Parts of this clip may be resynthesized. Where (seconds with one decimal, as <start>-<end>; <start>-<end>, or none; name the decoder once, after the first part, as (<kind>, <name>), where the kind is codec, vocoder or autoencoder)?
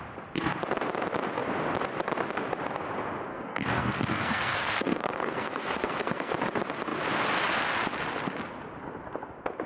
3.3-6.3 (codec, SNAC)